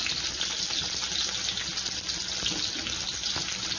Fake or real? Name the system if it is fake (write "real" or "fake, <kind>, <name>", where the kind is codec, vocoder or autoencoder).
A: real